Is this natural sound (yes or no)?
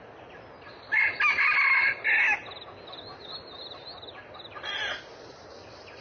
yes